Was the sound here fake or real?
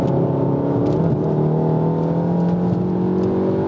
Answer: real